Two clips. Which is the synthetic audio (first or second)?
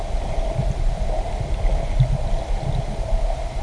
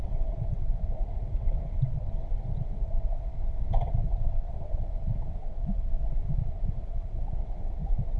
second